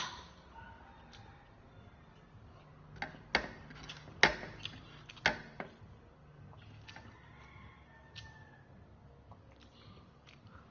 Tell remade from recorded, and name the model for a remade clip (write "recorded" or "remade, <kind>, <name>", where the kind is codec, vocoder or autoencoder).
recorded